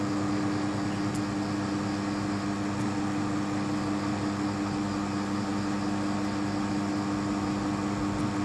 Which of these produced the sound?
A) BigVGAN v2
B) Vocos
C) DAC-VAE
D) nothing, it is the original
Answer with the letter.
D